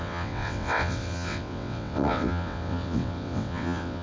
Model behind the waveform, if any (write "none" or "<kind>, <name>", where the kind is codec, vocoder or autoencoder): vocoder, WaveNeXt